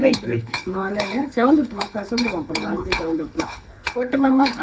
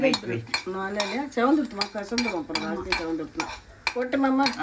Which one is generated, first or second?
first